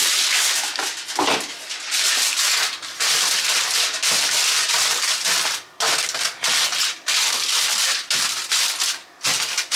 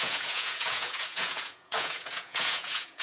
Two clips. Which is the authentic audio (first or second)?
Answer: first